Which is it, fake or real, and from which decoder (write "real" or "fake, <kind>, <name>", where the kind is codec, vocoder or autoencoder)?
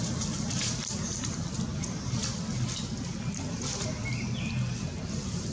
real